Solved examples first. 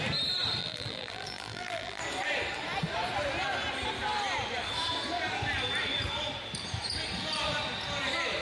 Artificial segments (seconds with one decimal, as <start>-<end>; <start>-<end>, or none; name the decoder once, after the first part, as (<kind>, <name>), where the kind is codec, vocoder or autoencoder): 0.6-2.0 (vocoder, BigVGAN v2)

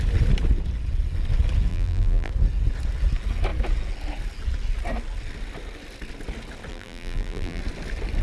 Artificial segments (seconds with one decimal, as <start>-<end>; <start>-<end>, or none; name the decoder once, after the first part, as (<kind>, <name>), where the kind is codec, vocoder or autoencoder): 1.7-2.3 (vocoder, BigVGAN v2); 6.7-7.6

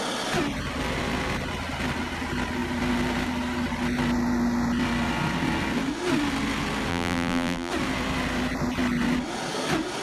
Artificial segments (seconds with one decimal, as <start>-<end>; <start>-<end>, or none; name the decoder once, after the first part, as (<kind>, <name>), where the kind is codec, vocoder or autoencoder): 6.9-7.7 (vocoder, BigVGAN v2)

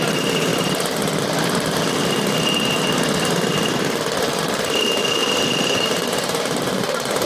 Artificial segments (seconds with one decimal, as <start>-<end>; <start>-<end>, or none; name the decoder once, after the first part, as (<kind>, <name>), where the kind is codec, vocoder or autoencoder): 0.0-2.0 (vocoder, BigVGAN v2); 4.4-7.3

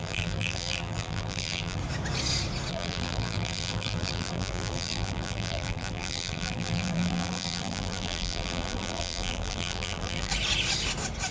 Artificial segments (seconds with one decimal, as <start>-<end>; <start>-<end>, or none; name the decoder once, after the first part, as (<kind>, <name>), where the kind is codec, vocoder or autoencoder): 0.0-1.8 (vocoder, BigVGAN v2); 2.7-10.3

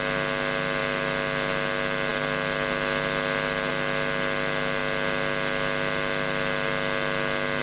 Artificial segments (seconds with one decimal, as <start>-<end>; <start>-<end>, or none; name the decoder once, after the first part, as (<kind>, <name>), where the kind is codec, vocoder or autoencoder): 2.1-3.7 (vocoder, BigVGAN v2)

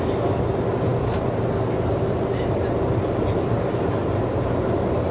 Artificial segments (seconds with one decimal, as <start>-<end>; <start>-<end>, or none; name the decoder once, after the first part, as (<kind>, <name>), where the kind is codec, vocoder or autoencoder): none